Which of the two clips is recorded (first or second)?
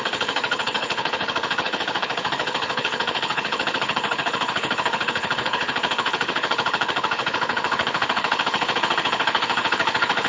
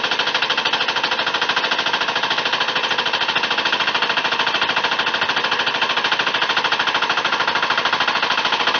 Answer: second